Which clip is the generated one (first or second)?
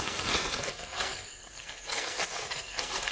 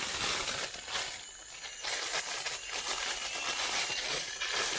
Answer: first